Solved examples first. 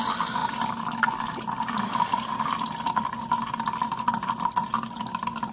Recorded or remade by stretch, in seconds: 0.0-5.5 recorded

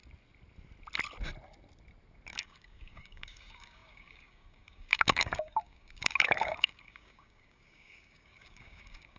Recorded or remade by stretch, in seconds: 0.0-2.3 recorded; 2.3-9.2 remade

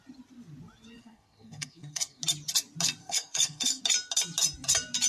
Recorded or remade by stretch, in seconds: 0.0-1.0 recorded; 1.0-2.2 remade; 2.2-3.0 recorded; 3.0-3.8 remade; 3.8-5.1 recorded

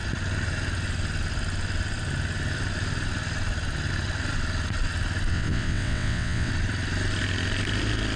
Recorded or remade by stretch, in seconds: 0.0-5.3 recorded; 5.3-6.5 remade; 6.5-8.2 recorded

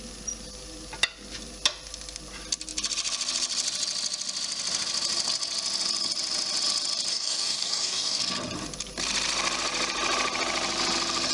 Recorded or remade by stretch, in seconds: 0.0-7.1 recorded; 7.1-8.2 remade; 8.2-11.3 recorded

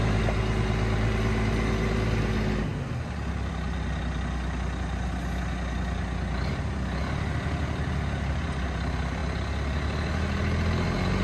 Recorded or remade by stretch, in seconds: 0.0-11.2 recorded